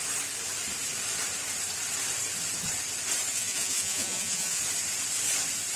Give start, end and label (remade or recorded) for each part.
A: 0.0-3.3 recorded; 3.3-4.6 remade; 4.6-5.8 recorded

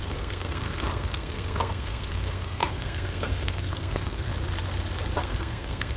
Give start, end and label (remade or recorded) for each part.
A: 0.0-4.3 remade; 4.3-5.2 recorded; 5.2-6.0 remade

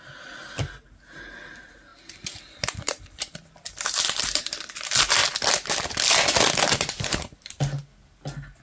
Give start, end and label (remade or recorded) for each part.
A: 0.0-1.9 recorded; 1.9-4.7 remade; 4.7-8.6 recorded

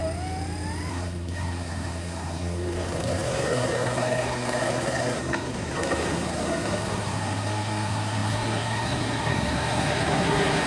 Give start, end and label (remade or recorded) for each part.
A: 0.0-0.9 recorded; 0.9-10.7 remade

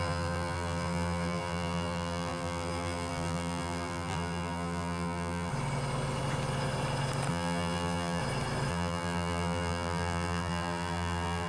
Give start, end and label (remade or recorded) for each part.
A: 0.0-5.5 remade; 5.5-7.3 recorded; 7.3-8.2 remade; 8.2-8.7 recorded; 8.7-11.5 remade